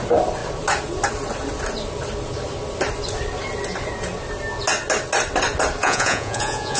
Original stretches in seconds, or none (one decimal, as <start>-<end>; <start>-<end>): 0.0-5.8